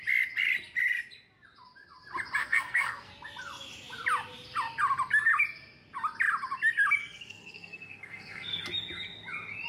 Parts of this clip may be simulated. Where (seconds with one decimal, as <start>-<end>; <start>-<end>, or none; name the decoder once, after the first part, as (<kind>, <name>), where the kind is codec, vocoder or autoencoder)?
2.4-3.1 (codec, SNAC); 7.0-8.6